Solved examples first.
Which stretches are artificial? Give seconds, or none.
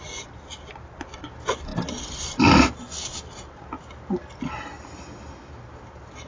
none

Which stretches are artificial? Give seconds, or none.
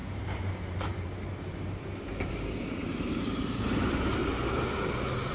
0.0-0.9 (vocoder, BigVGAN v2); 2.6-4.2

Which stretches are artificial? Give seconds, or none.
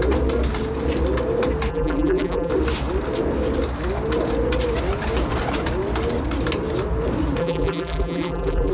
1.7-2.5 (vocoder, BigVGAN v2); 7.4-8.7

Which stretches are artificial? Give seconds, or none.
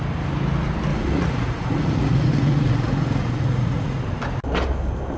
0.9-4.0 (vocoder, Vocos)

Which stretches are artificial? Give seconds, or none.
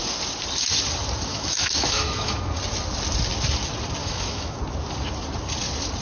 1.3-2.5 (autoencoder, DAC-VAE); 4.0-4.6